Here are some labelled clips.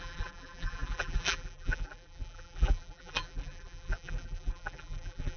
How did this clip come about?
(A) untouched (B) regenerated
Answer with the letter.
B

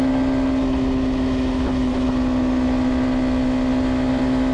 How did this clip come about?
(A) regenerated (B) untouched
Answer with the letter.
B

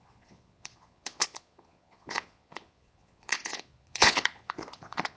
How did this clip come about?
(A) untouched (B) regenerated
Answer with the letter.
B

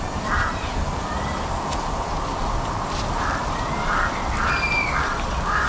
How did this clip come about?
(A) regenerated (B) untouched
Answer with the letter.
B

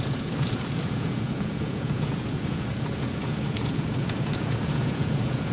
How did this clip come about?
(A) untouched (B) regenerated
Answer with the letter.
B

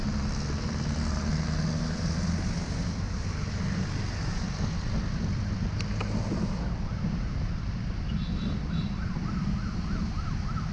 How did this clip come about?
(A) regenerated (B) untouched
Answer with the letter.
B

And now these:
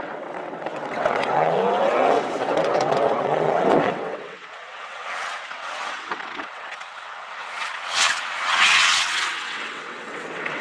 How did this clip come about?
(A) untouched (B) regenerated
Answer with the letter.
B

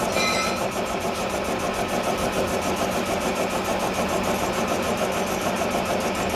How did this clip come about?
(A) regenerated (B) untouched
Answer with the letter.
B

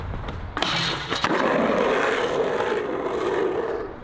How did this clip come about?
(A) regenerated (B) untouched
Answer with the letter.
B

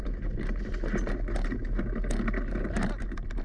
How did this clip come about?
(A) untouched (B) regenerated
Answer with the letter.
A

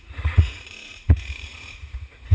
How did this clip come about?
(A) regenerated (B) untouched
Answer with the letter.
A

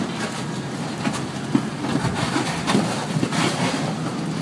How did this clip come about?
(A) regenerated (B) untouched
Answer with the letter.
B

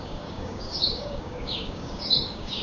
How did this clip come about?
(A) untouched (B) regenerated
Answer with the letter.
B